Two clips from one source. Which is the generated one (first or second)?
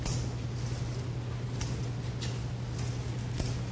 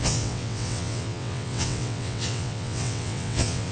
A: second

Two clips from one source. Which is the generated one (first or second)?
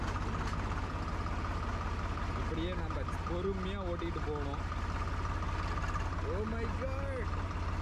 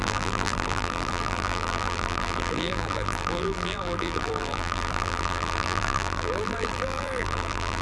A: second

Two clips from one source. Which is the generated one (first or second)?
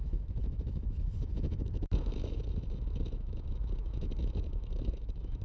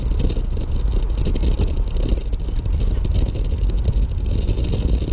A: first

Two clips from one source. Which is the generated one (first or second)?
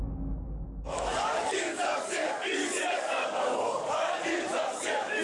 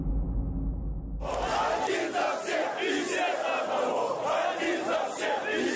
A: first